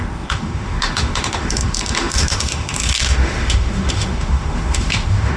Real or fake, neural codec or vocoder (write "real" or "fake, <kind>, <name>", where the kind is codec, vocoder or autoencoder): fake, autoencoder, DAC-VAE